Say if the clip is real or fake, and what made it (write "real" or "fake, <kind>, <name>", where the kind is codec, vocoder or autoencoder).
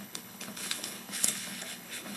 fake, codec, HILCodec